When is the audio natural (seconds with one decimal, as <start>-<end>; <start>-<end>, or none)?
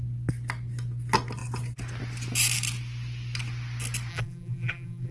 0.0-4.1